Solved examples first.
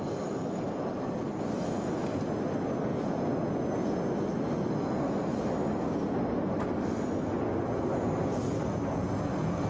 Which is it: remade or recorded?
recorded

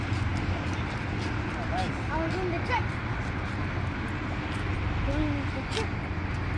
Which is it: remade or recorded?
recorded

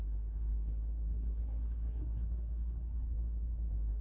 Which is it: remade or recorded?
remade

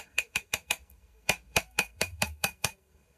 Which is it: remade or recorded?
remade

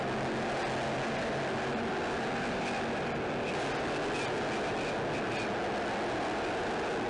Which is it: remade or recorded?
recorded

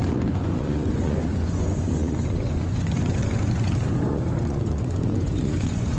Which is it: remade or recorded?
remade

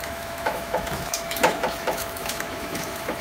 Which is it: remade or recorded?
remade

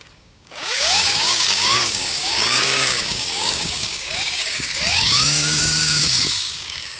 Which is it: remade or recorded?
remade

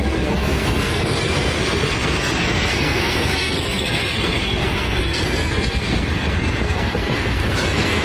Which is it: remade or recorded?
remade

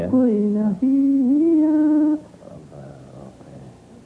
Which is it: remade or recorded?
recorded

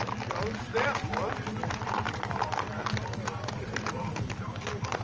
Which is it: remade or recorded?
recorded